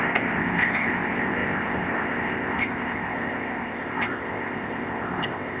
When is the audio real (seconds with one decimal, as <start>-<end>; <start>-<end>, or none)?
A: none